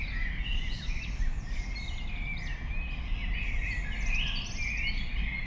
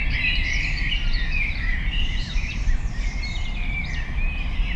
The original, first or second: first